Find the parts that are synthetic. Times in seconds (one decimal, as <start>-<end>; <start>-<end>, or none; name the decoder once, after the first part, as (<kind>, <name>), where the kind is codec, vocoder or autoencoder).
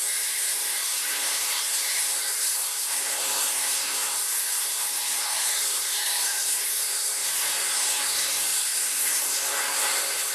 0.0-10.3 (codec, SNAC)